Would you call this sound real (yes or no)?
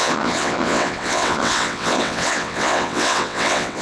no